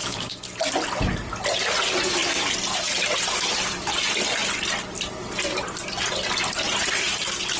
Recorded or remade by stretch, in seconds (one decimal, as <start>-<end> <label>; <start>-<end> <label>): 0.0-0.7 remade; 0.7-7.6 recorded